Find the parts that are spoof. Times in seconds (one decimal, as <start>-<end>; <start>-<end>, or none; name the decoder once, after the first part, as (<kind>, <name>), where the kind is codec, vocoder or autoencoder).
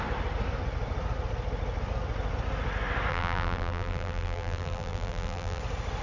3.1-5.6 (vocoder, BigVGAN v2)